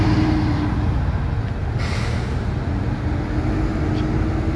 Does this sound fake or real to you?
real